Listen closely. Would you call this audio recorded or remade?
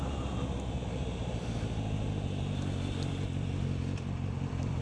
recorded